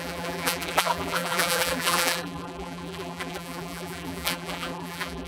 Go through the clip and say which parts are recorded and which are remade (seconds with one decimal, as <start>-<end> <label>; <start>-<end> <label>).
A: 0.0-5.3 remade